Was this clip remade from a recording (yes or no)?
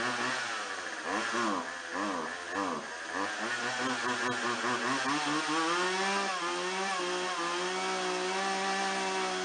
no